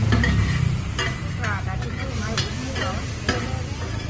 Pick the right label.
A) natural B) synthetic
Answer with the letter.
A